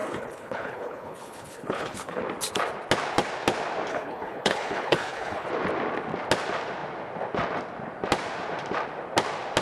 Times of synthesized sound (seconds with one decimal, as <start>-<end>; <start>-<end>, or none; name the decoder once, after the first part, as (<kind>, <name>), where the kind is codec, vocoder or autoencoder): 0.0-2.2 (codec, HILCodec); 3.9-5.5